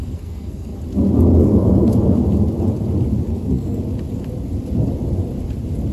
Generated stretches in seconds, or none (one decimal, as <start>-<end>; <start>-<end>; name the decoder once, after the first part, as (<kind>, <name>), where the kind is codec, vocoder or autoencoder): 0.0-0.8 (codec, SNAC); 1.4-2.2; 3.3-3.8